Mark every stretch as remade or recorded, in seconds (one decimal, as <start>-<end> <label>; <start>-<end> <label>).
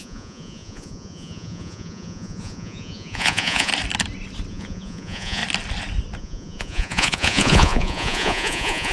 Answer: 0.0-3.7 remade; 3.7-4.5 recorded; 4.5-5.4 remade; 5.4-6.2 recorded; 6.2-8.9 remade